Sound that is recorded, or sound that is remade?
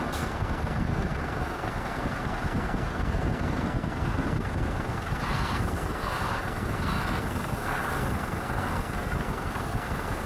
remade